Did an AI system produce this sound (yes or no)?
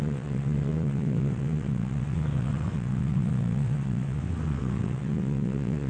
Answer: yes